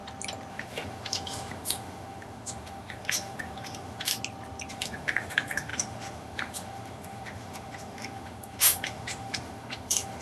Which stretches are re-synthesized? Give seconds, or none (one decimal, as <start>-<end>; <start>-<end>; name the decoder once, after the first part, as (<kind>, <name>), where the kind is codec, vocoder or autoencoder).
0.5-4.1 (autoencoder, DAC-VAE); 4.7-10.2